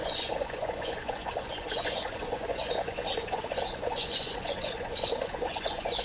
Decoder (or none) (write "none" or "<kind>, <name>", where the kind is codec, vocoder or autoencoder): vocoder, Vocos